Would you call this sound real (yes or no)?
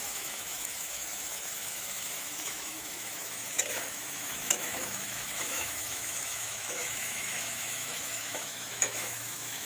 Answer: no